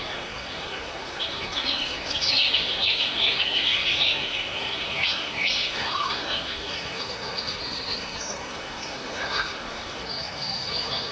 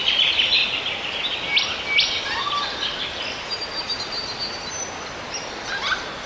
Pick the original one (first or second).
second